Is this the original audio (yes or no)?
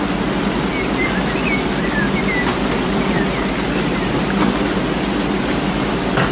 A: yes